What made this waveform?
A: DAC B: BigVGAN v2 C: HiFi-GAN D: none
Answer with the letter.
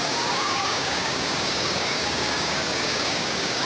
A